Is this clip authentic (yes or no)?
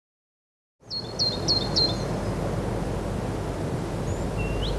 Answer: yes